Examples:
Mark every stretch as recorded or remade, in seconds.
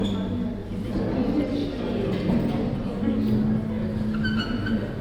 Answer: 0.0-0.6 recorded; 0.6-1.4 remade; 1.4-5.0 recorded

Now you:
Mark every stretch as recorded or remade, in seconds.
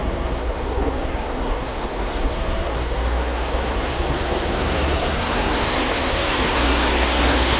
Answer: 0.0-7.6 remade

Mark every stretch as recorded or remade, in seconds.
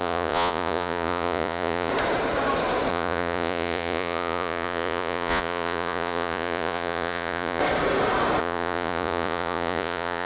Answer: 0.0-1.9 remade; 1.9-2.9 recorded; 2.9-7.6 remade; 7.6-8.4 recorded; 8.4-10.3 remade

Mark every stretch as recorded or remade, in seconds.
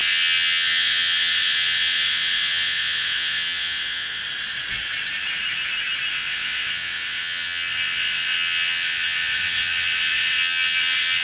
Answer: 0.0-4.2 remade; 4.2-6.1 recorded; 6.1-11.2 remade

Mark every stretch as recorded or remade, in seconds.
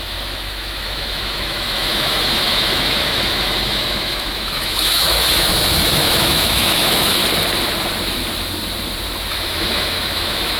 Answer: 0.0-7.2 remade; 7.2-9.3 recorded; 9.3-10.6 remade